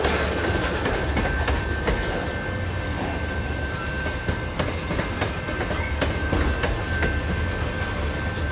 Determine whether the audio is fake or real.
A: real